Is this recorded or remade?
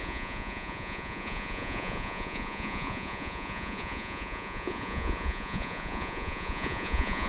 remade